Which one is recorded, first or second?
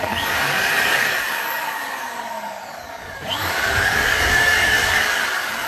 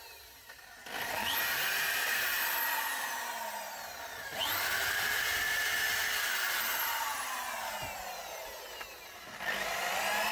second